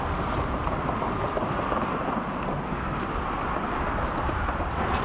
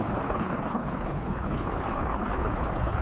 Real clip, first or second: first